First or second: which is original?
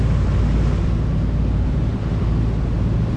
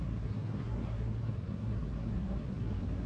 first